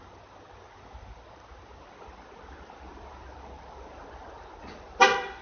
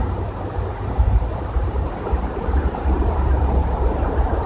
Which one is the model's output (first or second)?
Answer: second